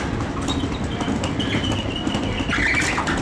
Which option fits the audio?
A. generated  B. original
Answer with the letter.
B